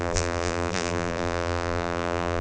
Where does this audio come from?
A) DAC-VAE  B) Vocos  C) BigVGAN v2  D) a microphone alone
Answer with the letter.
C